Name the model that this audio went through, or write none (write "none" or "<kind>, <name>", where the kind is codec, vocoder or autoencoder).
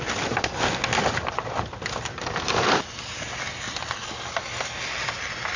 vocoder, BigVGAN v2